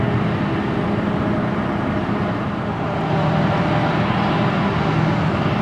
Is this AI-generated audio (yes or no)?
no